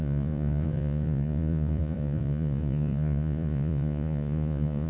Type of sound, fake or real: fake